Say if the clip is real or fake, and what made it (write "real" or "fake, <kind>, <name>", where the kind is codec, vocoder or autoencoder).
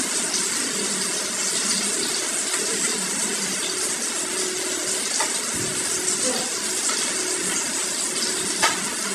real